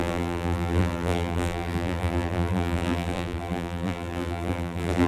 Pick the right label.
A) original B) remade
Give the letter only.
B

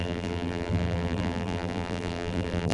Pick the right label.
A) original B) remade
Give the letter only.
B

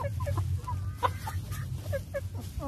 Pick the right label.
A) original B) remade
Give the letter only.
A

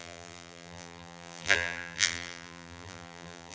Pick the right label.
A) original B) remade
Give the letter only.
B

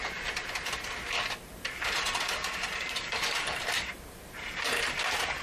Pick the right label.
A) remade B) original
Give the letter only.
A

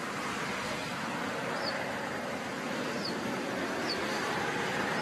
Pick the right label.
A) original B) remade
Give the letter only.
B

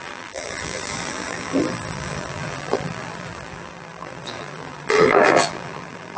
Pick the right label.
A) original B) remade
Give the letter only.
B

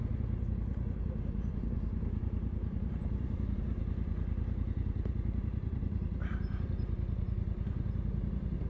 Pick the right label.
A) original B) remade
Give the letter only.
B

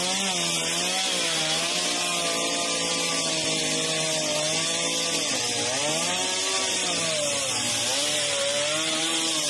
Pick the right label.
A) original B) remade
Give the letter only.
A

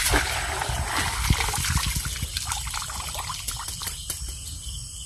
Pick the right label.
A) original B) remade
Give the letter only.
A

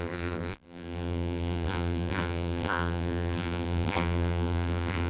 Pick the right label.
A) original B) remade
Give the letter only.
B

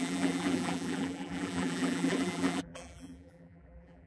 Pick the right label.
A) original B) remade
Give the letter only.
B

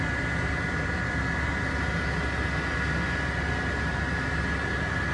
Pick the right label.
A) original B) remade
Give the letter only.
A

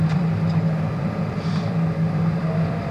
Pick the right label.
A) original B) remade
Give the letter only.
B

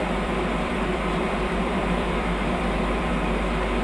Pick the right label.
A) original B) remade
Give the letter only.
B